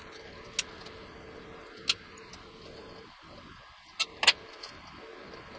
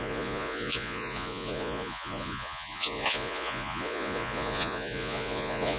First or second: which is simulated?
second